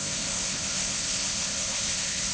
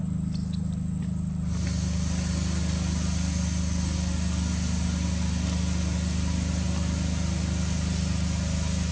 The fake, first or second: first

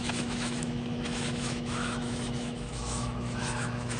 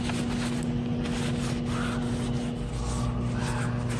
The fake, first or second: first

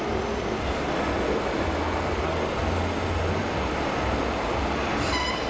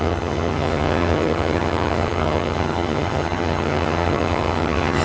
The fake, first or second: second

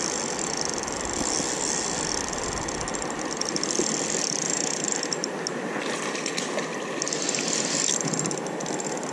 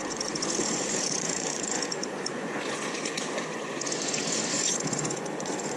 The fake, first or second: second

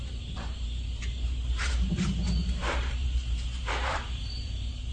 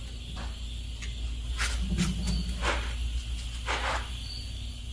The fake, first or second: first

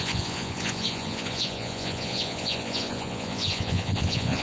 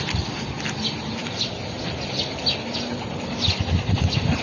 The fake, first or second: first